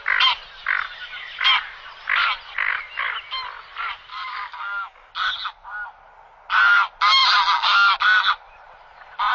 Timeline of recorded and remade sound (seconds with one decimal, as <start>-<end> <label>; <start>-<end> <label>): 0.0-4.1 recorded; 4.1-5.1 remade; 5.1-9.3 recorded